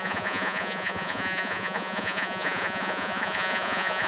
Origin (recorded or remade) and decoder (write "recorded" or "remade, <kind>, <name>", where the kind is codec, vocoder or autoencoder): remade, vocoder, Vocos